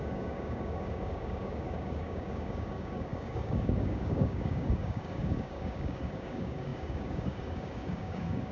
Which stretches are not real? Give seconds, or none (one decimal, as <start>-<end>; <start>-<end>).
0.0-8.5